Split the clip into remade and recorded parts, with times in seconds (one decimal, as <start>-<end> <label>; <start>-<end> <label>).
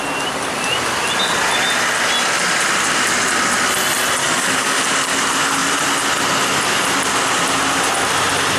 0.0-4.2 recorded; 4.2-4.8 remade; 4.8-8.6 recorded